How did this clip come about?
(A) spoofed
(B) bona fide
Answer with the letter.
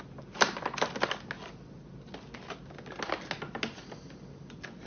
B